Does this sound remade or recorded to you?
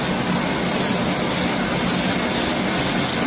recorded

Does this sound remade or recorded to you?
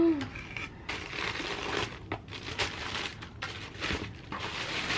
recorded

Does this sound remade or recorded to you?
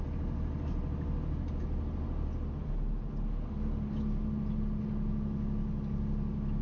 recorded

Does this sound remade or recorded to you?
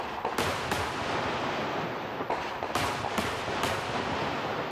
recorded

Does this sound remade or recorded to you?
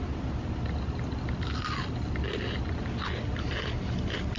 recorded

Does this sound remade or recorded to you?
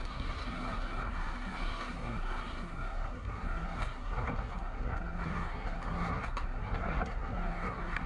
remade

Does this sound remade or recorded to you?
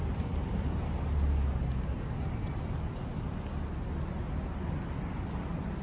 recorded